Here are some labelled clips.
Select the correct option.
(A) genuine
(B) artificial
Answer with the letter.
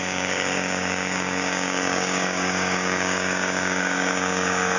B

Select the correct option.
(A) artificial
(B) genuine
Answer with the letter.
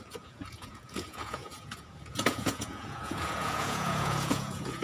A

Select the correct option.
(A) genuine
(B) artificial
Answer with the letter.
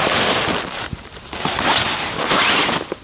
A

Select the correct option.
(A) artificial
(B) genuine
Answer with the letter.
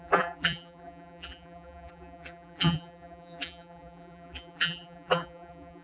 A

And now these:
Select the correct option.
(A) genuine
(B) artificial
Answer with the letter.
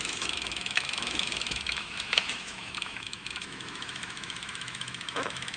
B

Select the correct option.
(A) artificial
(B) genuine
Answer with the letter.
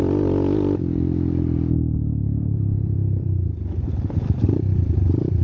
A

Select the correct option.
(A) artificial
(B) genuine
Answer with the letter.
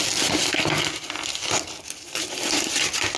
B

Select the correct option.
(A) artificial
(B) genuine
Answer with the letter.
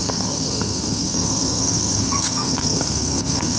A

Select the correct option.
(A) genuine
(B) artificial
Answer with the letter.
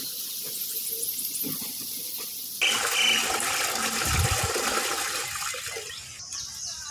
A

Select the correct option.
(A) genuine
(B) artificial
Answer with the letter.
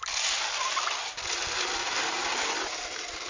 A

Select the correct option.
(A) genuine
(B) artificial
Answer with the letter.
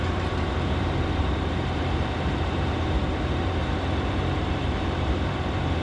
B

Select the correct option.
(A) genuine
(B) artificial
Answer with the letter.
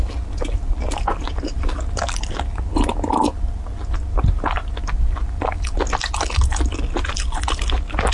A